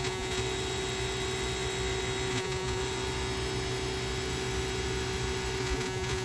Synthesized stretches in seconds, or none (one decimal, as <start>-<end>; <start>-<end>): 0.0-0.4; 2.3-2.8; 5.6-6.2